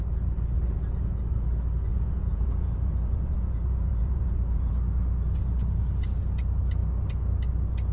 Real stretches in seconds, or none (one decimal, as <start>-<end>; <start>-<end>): 0.0-1.9; 4.7-7.9